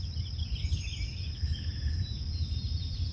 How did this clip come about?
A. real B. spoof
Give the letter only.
B